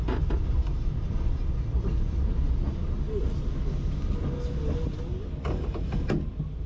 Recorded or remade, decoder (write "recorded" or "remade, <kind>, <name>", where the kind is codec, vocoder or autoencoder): recorded